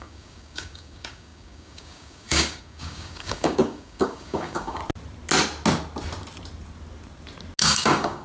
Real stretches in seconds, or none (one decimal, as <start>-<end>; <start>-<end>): 4.8-7.6